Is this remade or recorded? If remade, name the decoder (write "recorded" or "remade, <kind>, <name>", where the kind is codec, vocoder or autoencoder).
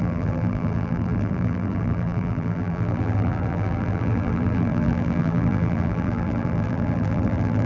remade, vocoder, BigVGAN v2